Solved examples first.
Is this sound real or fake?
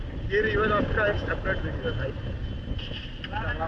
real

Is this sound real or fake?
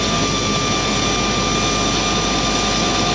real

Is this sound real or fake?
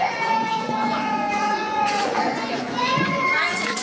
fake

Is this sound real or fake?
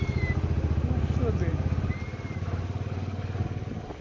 real